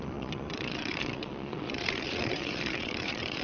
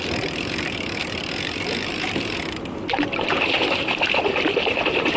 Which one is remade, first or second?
first